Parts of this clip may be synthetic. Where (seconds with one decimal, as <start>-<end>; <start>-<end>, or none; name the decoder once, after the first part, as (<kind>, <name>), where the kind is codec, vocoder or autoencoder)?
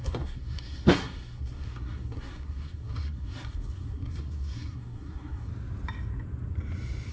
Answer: 0.0-5.5 (codec, SNAC)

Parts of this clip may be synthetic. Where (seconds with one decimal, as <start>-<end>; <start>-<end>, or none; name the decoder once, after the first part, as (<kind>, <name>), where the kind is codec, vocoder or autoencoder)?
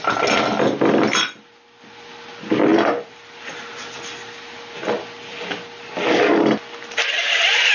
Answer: none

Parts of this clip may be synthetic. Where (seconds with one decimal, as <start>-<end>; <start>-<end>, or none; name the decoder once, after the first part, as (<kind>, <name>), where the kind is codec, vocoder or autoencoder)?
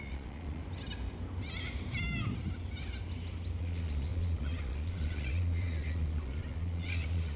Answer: 0.0-0.6 (vocoder, Vocos); 3.6-7.4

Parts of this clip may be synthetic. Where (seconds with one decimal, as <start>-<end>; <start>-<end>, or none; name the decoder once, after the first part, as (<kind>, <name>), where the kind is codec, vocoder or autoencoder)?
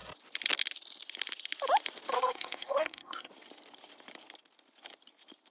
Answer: 2.1-3.3 (codec, SNAC)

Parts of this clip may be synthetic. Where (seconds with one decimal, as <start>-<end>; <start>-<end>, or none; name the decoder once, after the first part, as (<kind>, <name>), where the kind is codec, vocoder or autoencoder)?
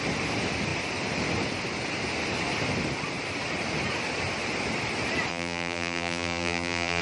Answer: 5.3-7.0 (vocoder, BigVGAN v2)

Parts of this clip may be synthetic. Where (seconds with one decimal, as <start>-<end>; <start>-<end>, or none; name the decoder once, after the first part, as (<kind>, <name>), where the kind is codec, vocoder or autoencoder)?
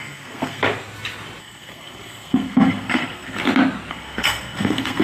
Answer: 0.0-0.6 (codec, SNAC); 1.4-3.4; 3.9-5.0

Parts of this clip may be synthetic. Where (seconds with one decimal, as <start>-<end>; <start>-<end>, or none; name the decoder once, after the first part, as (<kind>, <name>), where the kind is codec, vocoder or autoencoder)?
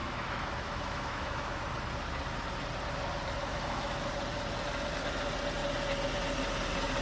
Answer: 0.0-1.6 (autoencoder, DAC-VAE); 3.5-4.1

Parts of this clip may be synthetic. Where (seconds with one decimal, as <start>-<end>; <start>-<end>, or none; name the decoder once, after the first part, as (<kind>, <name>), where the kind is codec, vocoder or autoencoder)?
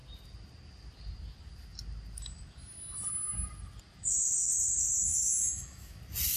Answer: 5.1-6.0 (autoencoder, DAC-VAE)